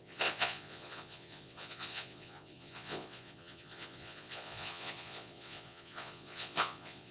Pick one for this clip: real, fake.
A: fake